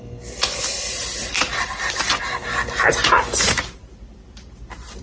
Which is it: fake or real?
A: real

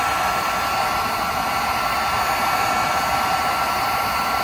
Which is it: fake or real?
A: real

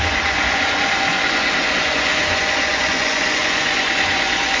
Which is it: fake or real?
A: fake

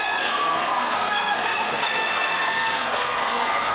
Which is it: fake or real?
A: fake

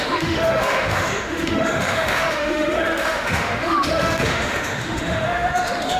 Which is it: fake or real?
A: fake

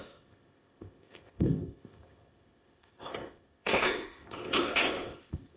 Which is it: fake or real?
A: fake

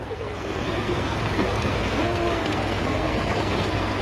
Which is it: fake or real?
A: fake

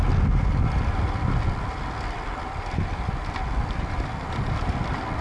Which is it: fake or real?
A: real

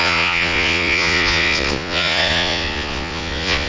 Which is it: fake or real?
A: fake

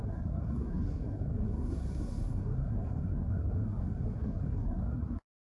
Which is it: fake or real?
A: fake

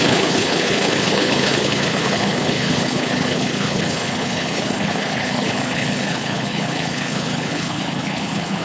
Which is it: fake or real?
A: fake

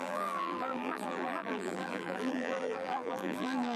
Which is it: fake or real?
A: fake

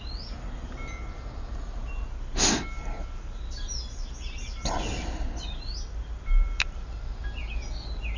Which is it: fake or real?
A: real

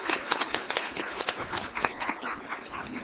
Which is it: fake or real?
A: fake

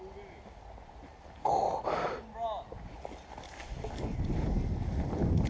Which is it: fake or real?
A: real